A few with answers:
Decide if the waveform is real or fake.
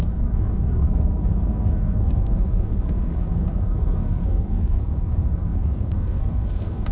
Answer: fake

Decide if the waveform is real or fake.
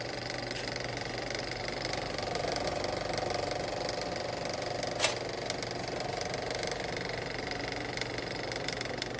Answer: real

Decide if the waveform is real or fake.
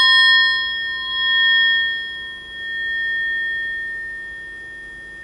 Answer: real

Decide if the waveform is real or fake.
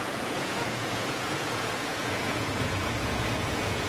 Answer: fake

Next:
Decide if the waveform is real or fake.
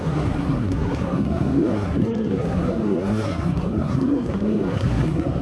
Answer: fake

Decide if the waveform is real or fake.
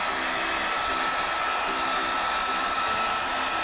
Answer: real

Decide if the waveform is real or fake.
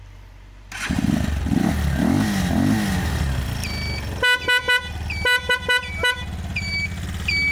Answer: real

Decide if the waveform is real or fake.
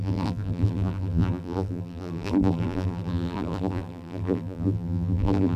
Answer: fake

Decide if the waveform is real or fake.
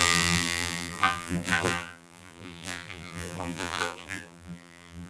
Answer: fake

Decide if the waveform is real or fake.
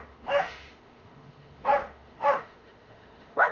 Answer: fake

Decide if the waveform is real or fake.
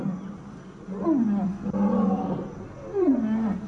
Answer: real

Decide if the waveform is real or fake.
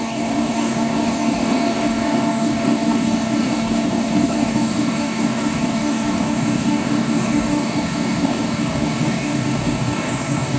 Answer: fake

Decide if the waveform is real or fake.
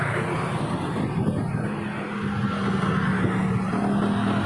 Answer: real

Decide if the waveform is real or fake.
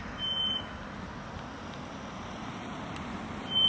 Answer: real